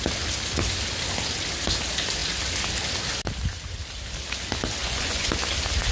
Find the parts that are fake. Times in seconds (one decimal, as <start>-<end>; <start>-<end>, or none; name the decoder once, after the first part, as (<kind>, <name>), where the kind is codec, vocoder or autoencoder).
4.8-5.3 (vocoder, Vocos)